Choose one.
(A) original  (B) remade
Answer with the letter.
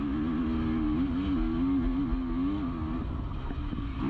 A